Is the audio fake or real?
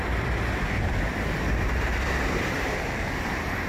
fake